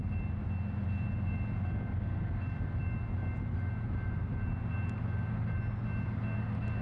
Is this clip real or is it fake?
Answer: real